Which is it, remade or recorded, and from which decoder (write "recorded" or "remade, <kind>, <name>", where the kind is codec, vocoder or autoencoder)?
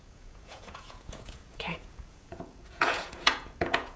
remade, vocoder, Vocos